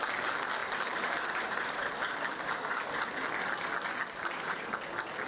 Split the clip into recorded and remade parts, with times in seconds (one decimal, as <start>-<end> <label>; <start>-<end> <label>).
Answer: 0.0-0.6 recorded; 0.6-2.2 remade; 2.2-4.0 recorded; 4.0-4.7 remade; 4.7-5.3 recorded